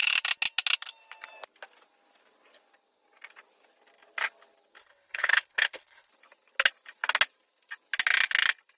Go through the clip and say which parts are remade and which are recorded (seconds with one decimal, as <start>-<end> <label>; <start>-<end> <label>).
0.0-4.8 recorded; 4.8-6.1 remade; 6.1-8.8 recorded